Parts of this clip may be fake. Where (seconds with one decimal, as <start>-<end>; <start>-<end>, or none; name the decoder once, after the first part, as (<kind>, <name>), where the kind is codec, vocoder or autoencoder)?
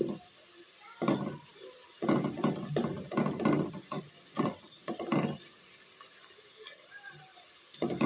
none